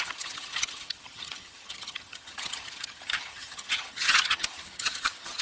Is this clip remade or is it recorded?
remade